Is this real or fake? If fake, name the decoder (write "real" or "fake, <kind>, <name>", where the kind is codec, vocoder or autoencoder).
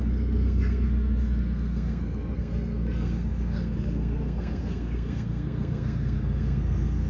fake, codec, SNAC